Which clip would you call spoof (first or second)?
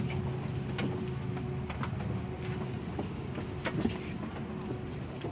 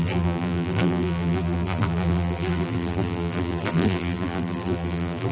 second